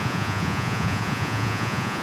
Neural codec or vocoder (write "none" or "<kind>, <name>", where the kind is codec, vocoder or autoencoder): vocoder, Vocos